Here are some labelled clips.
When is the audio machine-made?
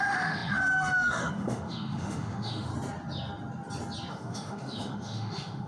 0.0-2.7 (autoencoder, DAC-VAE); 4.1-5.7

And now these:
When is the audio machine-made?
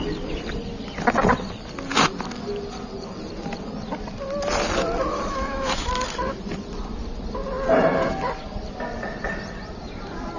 5.1-5.9 (autoencoder, DAC-VAE)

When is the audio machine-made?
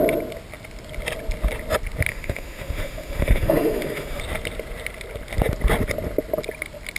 2.1-4.2 (autoencoder, DAC-VAE)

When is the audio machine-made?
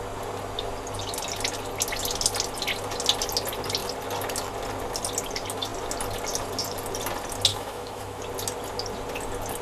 7.5-8.2 (autoencoder, DAC-VAE)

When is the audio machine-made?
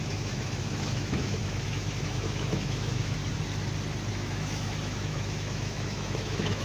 0.0-3.2 (autoencoder, DAC-VAE); 4.1-6.6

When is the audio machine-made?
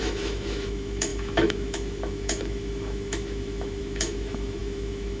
0.0-5.2 (autoencoder, DAC-VAE)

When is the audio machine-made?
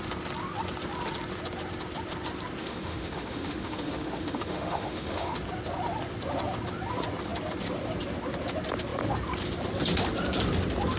2.6-5.3 (autoencoder, DAC-VAE)